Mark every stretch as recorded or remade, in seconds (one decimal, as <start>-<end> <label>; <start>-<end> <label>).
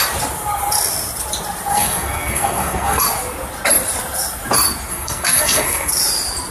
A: 0.0-1.7 recorded; 1.7-3.0 remade; 3.0-4.9 recorded; 4.9-5.9 remade; 5.9-6.5 recorded